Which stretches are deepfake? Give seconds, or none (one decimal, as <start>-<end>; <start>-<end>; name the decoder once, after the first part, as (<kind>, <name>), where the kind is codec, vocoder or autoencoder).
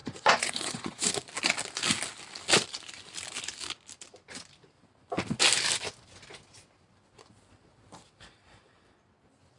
0.0-1.1 (vocoder, Vocos)